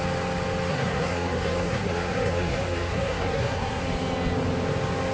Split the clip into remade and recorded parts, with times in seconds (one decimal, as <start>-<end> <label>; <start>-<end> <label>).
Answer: 0.0-0.7 recorded; 0.7-3.8 remade; 3.8-5.1 recorded